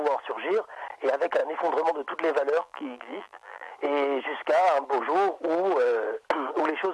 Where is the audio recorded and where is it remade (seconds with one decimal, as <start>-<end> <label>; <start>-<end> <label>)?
0.0-2.6 recorded; 2.6-3.7 remade; 3.7-6.9 recorded